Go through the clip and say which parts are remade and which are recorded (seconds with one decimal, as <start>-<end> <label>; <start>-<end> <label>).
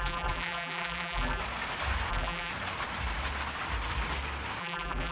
0.0-1.4 remade; 1.4-2.1 recorded; 2.1-2.5 remade; 2.5-4.6 recorded; 4.6-5.1 remade